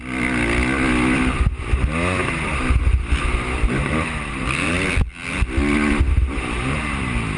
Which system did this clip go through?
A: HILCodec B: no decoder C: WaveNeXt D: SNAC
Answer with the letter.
B